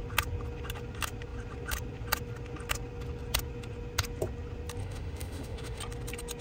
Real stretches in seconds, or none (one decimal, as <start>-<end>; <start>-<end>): 0.0-4.8; 5.8-6.4